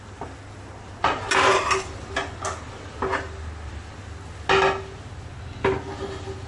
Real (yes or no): yes